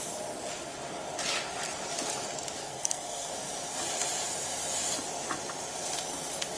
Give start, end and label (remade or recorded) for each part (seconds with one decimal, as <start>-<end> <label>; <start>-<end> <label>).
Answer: 0.0-2.6 recorded; 2.6-3.3 remade; 3.3-6.6 recorded